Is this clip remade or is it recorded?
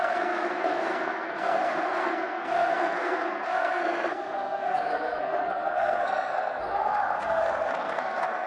remade